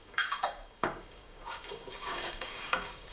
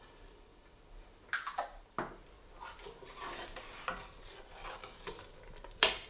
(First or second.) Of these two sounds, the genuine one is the second